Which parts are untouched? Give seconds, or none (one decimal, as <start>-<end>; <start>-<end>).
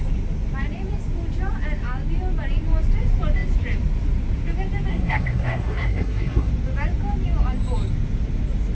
0.0-4.9; 6.5-8.7